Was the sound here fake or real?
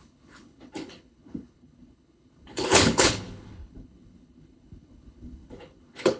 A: fake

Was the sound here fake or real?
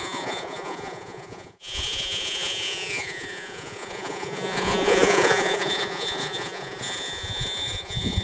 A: fake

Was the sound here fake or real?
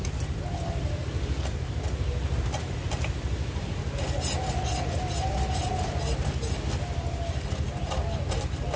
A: real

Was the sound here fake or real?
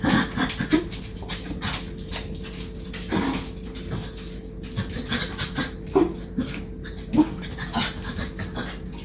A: real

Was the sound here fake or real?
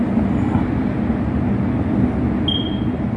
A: real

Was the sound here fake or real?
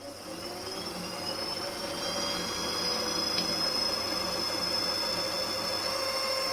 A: real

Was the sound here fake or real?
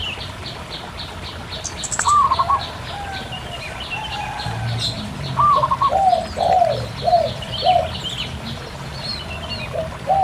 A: real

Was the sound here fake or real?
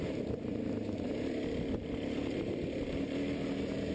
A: real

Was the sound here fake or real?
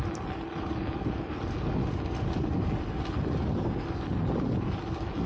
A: real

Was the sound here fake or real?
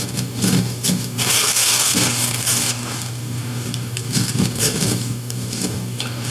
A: fake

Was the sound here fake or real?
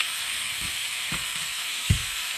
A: fake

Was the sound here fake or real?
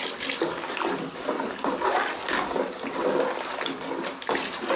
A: real